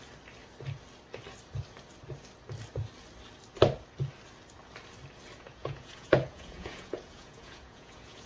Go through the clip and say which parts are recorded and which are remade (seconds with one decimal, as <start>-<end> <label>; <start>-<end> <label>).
0.0-5.6 recorded; 5.6-8.3 remade